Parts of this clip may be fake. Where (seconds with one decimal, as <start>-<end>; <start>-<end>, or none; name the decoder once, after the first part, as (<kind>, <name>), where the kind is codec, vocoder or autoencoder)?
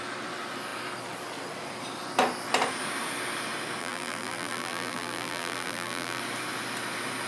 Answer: 3.8-6.2 (vocoder, BigVGAN v2)